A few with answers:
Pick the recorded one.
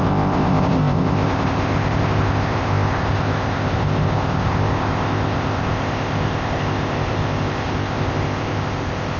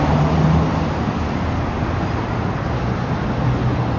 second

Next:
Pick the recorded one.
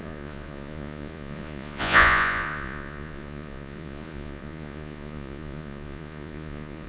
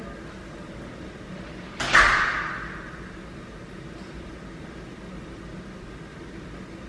second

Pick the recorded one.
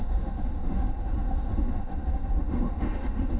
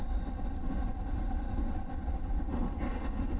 second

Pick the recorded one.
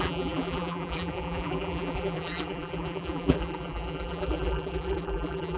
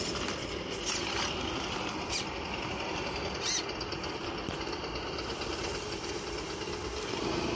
second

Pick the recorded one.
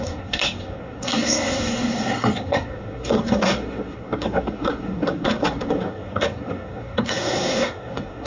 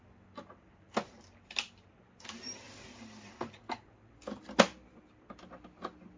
second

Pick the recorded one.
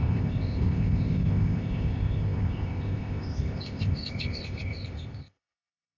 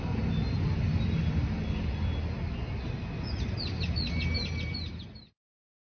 second